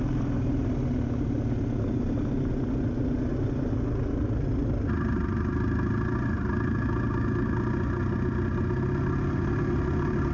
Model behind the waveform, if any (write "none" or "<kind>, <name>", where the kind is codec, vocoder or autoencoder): none